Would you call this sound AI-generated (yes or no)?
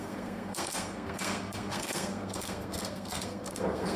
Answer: yes